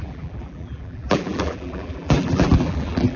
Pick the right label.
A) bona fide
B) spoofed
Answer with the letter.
B